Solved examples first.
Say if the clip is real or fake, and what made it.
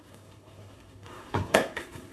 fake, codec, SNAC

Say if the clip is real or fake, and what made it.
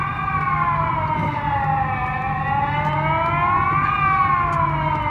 real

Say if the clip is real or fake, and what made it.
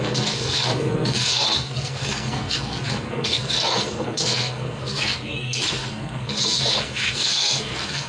fake, codec, SNAC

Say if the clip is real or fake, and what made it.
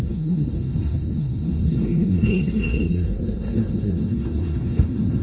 fake, codec, SNAC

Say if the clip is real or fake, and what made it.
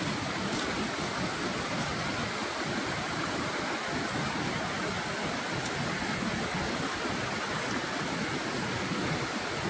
real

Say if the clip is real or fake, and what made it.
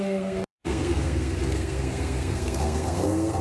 fake, codec, SNAC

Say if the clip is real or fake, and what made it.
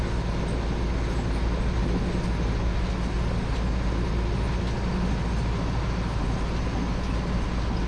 real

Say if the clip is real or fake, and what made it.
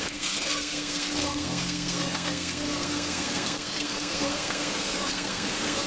fake, codec, SNAC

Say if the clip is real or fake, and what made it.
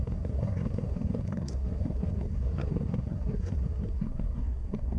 fake, codec, SNAC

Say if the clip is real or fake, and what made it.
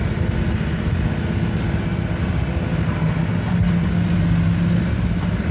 real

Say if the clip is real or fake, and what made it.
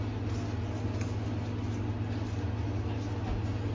real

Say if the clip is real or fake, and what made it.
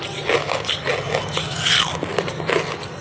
real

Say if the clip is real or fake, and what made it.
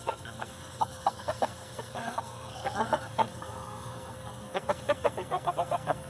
fake, codec, SNAC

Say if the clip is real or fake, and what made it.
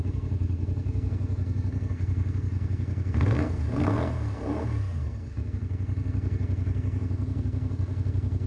fake, codec, SNAC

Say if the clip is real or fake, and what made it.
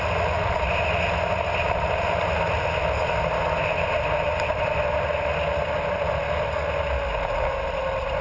real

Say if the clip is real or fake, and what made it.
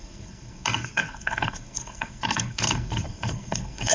fake, codec, SNAC